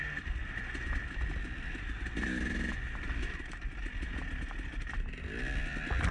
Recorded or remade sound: recorded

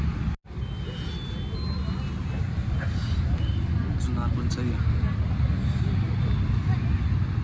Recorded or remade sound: recorded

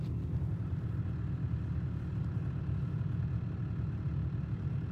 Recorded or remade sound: recorded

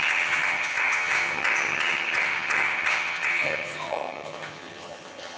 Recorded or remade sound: remade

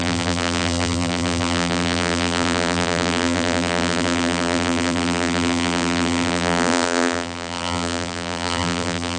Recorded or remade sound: remade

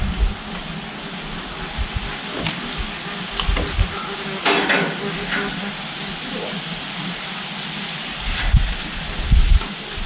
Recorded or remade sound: recorded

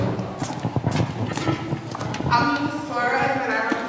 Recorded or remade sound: recorded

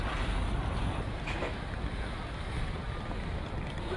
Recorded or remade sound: recorded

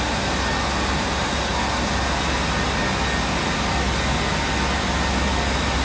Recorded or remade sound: recorded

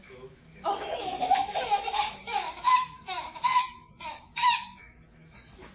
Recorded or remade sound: remade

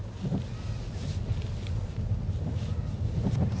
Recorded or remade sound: recorded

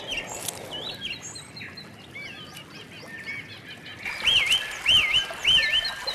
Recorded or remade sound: recorded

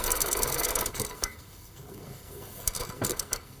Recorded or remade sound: remade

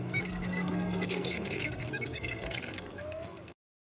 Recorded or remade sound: remade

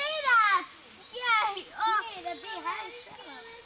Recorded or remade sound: recorded